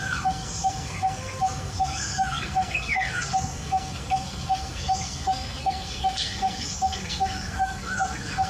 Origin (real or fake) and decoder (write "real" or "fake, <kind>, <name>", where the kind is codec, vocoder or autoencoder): fake, codec, SNAC